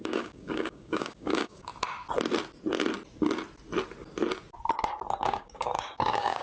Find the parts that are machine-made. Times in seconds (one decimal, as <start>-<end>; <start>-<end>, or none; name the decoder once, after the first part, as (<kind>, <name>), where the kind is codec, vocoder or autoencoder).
0.0-1.7 (codec, DAC); 5.2-6.4